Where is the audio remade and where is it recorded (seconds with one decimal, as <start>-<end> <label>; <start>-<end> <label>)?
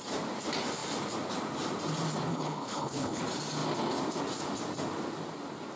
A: 0.0-2.3 recorded; 2.3-3.2 remade; 3.2-5.8 recorded